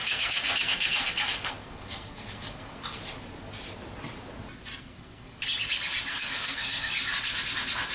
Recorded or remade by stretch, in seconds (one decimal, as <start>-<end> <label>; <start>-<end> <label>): 0.0-3.0 remade; 3.0-4.7 recorded; 4.7-5.4 remade; 5.4-6.1 recorded; 6.1-6.9 remade; 6.9-7.9 recorded

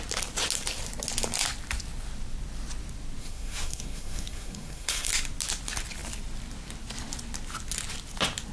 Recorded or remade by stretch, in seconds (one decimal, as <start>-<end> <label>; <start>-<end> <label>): 0.0-3.2 recorded; 3.2-5.1 remade; 5.1-8.5 recorded